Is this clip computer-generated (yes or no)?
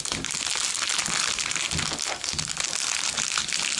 no